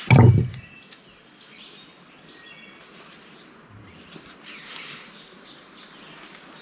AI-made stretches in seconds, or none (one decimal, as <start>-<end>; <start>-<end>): none